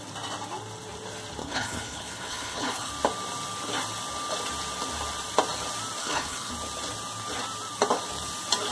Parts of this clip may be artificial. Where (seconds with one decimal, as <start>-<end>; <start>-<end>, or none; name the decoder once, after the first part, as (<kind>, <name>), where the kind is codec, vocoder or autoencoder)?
1.4-2.9 (codec, HILCodec); 6.0-6.5